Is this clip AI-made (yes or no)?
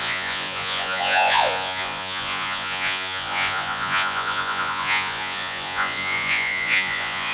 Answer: yes